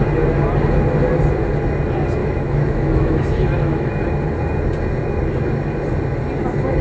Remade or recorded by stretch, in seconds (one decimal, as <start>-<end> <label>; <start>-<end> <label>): 0.0-2.2 recorded; 2.2-3.9 remade; 3.9-6.8 recorded